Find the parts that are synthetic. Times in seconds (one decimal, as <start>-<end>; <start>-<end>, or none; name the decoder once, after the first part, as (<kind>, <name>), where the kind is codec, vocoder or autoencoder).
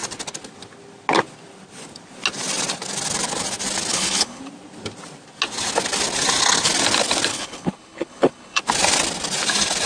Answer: 3.9-4.4 (codec, HILCodec); 7.3-8.6